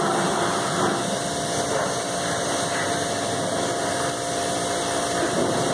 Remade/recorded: recorded